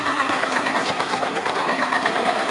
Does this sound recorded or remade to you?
remade